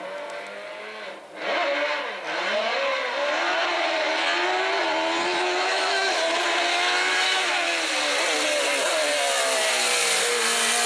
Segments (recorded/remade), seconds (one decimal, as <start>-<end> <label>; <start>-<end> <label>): 0.0-5.7 recorded; 5.7-6.2 remade; 6.2-6.7 recorded; 6.7-7.5 remade; 7.5-10.9 recorded